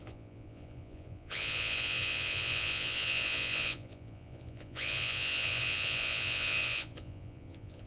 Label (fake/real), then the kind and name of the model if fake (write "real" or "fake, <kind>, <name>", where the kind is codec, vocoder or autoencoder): fake, vocoder, Vocos